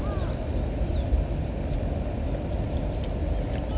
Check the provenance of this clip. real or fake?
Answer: real